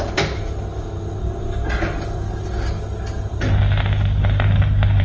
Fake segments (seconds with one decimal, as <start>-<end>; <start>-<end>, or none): none